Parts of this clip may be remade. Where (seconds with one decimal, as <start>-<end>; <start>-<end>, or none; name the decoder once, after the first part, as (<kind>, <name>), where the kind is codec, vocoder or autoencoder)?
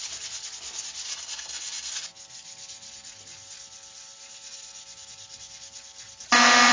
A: 1.1-1.9 (codec, SNAC)